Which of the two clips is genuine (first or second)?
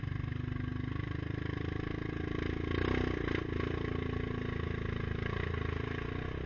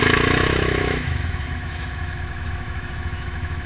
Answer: first